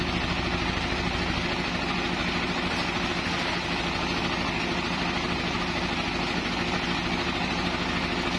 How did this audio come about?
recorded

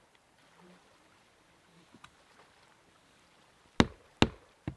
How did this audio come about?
recorded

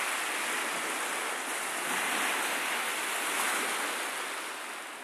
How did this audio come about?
recorded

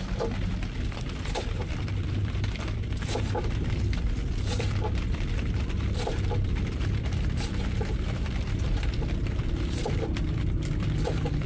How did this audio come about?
remade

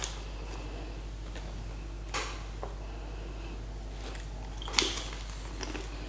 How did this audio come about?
recorded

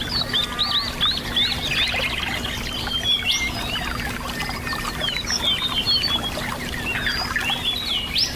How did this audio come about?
recorded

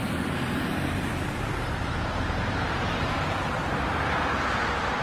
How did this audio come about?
remade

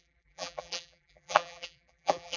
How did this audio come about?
remade